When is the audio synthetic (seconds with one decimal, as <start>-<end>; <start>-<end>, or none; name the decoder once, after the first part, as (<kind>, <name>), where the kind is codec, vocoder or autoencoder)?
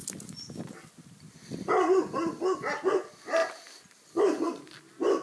3.4-4.5 (vocoder, BigVGAN v2)